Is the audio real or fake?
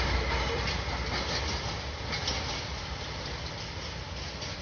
real